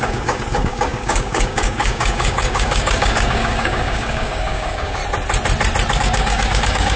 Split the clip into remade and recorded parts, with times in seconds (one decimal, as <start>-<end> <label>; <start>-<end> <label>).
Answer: 0.0-5.0 remade; 5.0-6.0 recorded; 6.0-7.0 remade